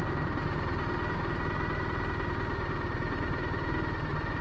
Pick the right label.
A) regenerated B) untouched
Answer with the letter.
B